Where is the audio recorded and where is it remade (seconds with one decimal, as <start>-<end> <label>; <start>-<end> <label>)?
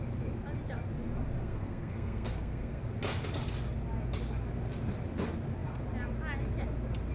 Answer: 0.0-1.4 recorded; 1.4-2.8 remade; 2.8-7.1 recorded